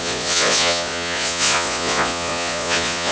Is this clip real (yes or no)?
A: no